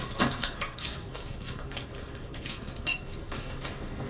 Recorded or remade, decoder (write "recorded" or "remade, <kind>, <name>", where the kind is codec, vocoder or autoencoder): remade, codec, SNAC